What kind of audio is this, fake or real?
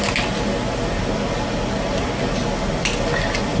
real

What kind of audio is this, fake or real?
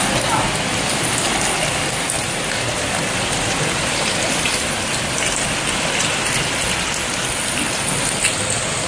real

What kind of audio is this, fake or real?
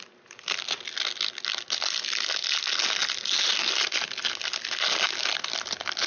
real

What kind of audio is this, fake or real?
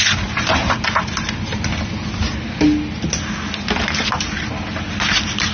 real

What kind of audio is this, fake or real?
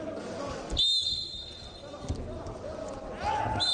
real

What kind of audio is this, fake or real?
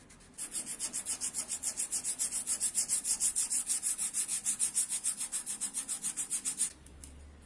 real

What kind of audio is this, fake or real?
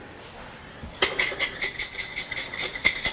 real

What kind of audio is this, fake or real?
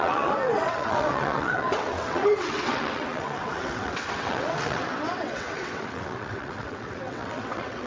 fake